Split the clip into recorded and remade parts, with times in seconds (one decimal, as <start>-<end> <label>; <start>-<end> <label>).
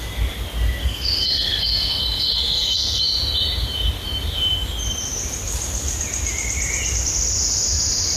0.0-0.8 recorded; 0.8-3.0 remade; 3.0-8.2 recorded